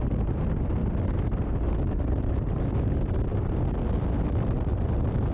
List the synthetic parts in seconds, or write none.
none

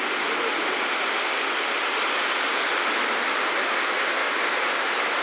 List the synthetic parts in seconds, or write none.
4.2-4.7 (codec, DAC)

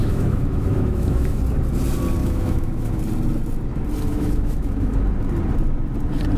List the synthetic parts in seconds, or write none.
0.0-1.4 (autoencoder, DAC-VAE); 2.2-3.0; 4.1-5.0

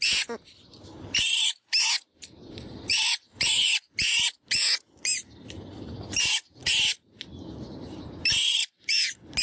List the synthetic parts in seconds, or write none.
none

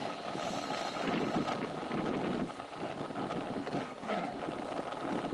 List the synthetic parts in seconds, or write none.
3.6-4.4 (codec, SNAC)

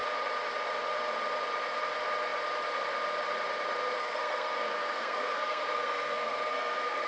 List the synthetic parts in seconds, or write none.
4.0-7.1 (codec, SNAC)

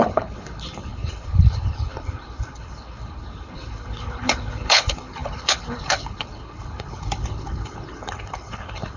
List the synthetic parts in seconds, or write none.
0.0-9.0 (codec, HILCodec)